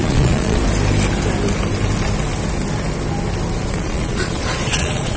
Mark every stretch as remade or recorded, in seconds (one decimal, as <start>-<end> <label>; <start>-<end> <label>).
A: 0.0-0.6 remade; 0.6-3.7 recorded; 3.7-5.2 remade